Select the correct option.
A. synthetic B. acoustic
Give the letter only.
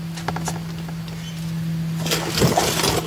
B